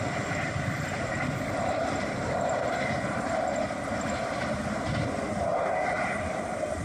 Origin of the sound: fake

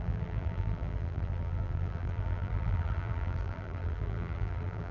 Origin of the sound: fake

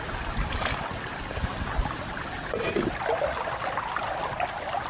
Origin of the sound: real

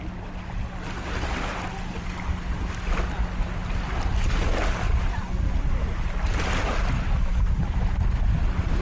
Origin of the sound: real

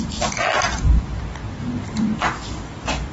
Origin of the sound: fake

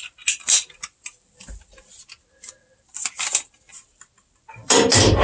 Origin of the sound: fake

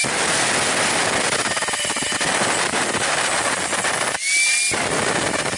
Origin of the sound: real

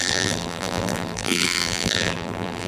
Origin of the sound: fake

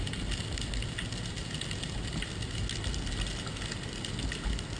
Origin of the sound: real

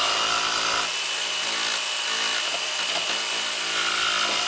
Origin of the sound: real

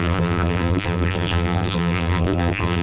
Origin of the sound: fake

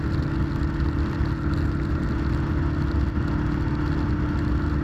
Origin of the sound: real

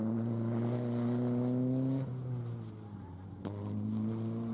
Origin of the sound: real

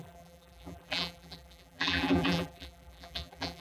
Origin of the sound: fake